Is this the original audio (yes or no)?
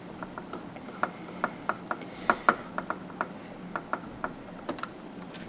yes